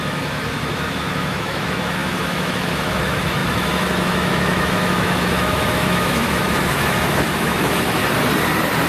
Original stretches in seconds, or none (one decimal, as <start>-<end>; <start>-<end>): 8.0-8.9